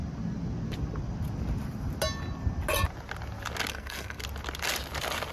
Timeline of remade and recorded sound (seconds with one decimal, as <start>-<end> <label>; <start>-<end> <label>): 0.0-3.7 recorded; 3.7-4.2 remade; 4.2-5.3 recorded